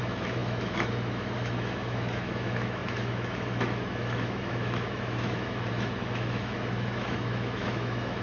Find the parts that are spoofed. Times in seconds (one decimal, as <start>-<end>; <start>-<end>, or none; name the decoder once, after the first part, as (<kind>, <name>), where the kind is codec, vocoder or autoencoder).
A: 0.0-8.2 (autoencoder, DAC-VAE)